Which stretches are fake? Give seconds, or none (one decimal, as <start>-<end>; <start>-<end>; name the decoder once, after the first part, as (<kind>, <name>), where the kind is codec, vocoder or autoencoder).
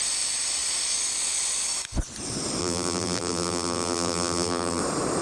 2.6-4.8 (vocoder, BigVGAN v2)